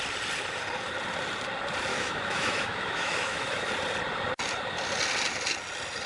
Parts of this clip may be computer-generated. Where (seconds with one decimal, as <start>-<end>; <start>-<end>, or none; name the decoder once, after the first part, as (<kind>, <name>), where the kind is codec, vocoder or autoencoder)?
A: 1.9-3.7 (autoencoder, DAC-VAE)